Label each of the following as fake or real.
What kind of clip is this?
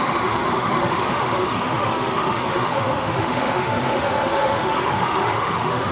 fake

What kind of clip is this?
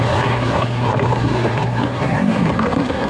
fake